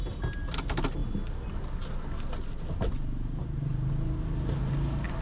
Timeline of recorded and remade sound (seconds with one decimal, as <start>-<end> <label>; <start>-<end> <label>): 0.0-5.2 recorded